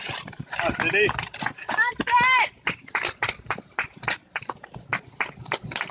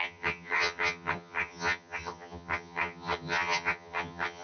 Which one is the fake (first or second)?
second